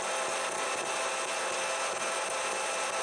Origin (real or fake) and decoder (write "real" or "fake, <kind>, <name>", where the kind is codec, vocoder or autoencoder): real